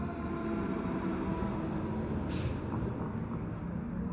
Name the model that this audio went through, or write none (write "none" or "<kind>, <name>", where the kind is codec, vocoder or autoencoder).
none